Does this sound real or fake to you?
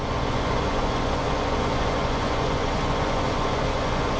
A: fake